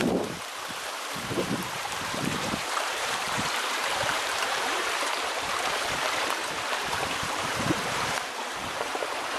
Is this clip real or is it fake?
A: fake